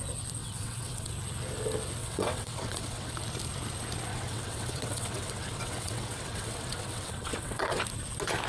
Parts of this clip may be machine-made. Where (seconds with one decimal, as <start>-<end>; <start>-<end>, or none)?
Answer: 0.4-1.1; 2.0-3.1; 4.1-7.8